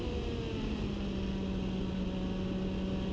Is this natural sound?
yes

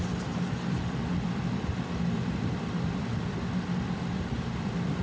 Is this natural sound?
no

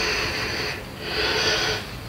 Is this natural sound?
yes